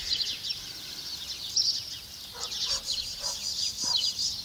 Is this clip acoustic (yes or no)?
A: yes